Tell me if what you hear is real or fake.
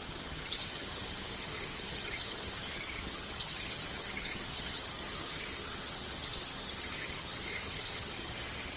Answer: fake